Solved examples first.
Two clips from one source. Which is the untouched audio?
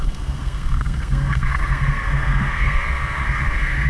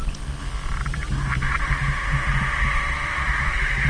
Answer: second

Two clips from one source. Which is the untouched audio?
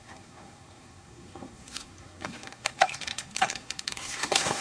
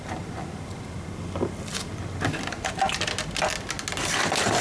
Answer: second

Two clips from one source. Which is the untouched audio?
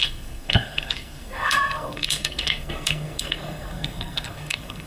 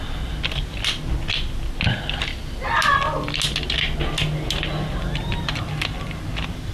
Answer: second